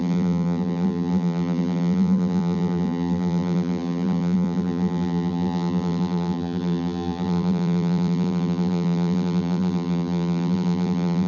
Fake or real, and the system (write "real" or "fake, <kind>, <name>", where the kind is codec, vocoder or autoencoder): fake, vocoder, BigVGAN v2